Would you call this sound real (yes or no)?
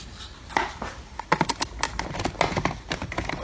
yes